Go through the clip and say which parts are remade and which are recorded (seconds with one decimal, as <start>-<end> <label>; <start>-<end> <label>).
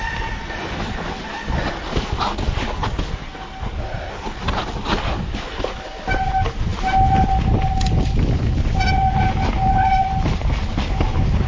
0.0-11.5 recorded